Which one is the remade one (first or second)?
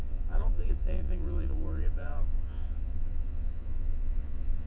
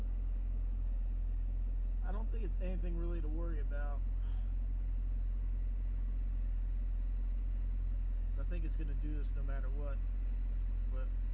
first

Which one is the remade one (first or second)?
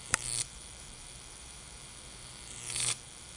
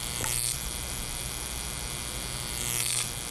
first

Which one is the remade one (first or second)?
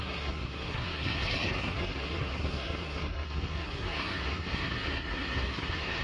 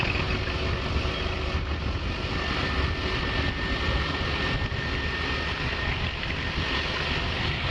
first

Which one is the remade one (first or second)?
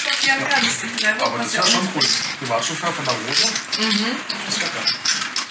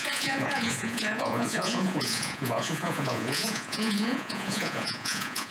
second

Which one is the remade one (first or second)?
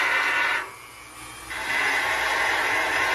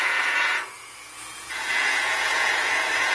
second